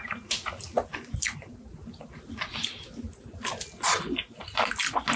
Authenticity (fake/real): real